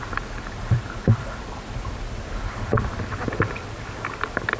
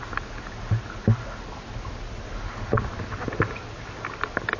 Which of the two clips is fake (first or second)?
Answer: first